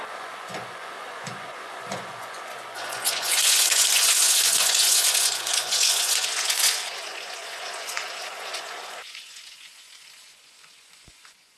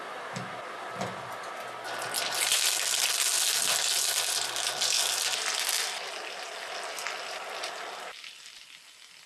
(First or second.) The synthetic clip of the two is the first